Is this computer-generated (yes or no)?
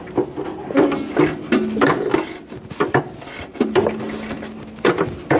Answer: no